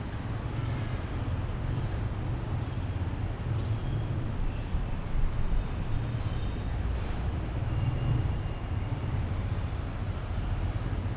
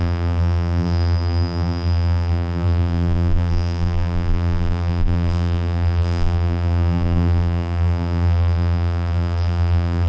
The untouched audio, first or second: first